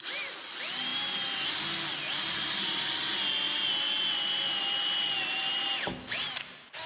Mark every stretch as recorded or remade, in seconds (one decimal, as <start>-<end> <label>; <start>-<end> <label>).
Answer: 0.0-6.9 recorded